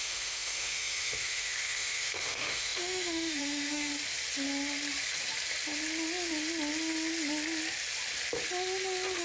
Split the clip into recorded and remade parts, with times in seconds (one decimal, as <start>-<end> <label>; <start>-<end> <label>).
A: 0.0-3.9 remade; 3.9-9.2 recorded